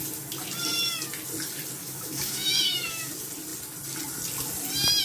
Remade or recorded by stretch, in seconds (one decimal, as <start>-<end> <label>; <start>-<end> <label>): 0.0-1.8 recorded; 1.8-3.1 remade; 3.1-5.0 recorded